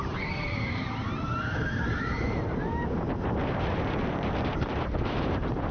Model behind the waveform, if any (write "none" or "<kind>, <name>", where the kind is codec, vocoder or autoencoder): vocoder, BigVGAN v2